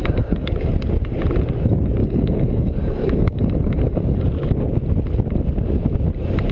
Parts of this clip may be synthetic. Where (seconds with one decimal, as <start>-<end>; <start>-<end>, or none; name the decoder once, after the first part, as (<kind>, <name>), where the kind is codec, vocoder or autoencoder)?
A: 0.0-0.7 (codec, DAC); 2.0-4.2